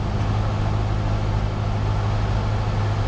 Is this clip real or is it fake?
real